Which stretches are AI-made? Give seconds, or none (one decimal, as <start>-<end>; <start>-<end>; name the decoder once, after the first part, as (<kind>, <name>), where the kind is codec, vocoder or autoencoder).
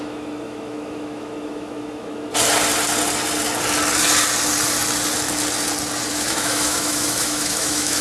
0.0-2.3 (autoencoder, DAC-VAE); 6.1-8.0